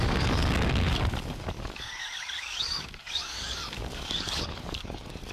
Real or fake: fake